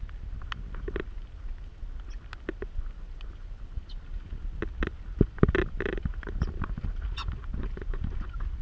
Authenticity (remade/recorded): recorded